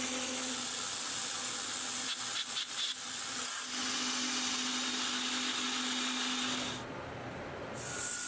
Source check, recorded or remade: recorded